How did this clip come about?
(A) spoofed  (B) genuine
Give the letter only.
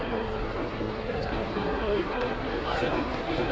A